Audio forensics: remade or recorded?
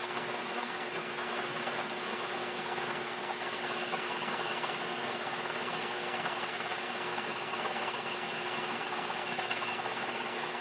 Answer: remade